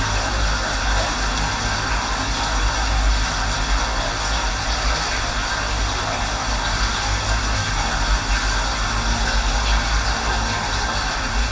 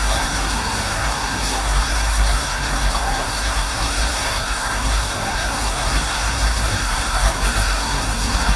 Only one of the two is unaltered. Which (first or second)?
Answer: first